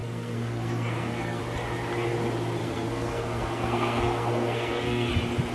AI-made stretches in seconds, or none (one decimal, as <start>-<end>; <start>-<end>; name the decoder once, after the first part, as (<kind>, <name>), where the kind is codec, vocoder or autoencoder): 0.0-1.4 (codec, SNAC); 2.6-5.1

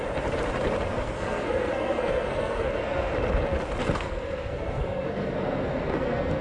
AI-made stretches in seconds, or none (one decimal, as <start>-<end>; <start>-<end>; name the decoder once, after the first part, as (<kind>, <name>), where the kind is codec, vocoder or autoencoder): 0.9-3.1 (codec, SNAC); 3.8-6.4

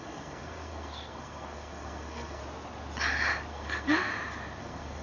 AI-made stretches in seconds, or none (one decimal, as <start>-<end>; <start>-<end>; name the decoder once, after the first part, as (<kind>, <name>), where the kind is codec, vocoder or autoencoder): 0.0-2.4 (codec, SNAC); 3.5-4.1; 4.6-5.0

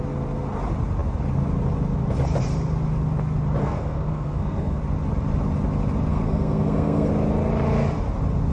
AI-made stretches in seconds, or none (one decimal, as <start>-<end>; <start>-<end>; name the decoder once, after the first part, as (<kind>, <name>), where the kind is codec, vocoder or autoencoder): 3.6-4.8 (codec, SNAC); 6.1-7.1

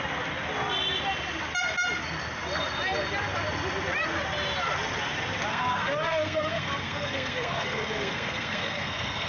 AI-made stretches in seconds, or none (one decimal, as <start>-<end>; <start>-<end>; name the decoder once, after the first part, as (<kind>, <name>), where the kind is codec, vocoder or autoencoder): 5.5-9.3 (codec, SNAC)

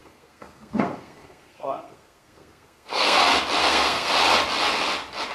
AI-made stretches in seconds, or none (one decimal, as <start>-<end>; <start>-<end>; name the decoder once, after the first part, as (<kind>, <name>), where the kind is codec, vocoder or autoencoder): 0.0-3.2 (codec, SNAC); 3.6-4.1